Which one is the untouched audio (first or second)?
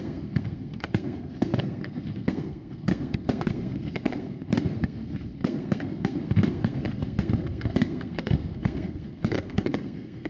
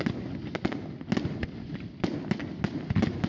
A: second